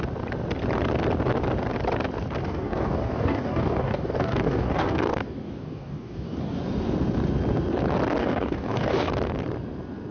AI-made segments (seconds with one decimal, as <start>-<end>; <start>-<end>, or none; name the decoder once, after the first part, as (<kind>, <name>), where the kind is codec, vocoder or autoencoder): 2.4-6.6 (codec, DAC); 8.2-9.1